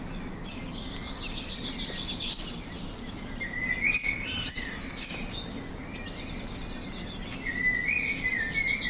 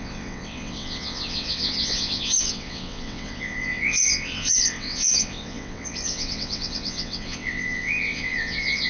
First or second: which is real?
first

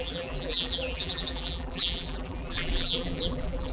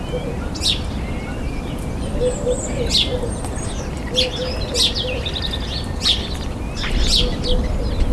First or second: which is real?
second